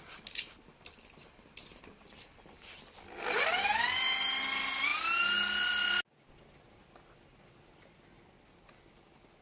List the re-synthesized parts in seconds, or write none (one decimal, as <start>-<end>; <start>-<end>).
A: none